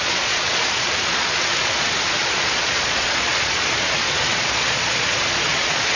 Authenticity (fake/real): fake